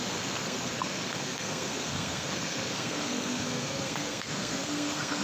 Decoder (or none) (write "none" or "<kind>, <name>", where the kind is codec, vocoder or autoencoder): codec, SNAC